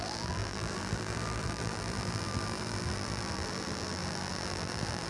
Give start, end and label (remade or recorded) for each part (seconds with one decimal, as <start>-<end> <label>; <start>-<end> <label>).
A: 0.0-5.1 remade